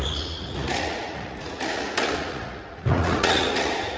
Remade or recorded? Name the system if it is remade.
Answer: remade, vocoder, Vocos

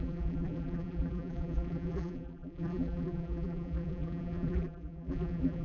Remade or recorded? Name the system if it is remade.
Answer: remade, vocoder, BigVGAN v2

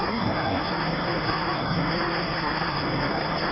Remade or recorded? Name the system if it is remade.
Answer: remade, codec, SNAC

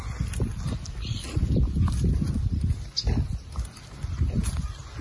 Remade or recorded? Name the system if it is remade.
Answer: recorded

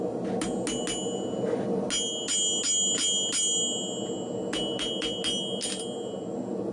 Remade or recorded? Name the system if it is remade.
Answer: recorded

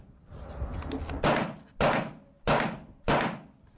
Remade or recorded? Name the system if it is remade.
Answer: recorded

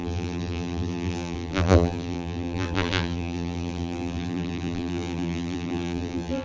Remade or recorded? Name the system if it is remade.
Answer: remade, vocoder, BigVGAN v2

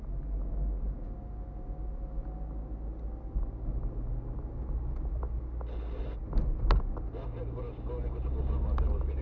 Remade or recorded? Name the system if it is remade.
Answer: recorded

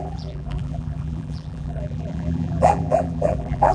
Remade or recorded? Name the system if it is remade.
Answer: remade, vocoder, BigVGAN v2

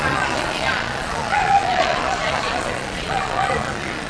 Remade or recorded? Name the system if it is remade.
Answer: remade, vocoder, Vocos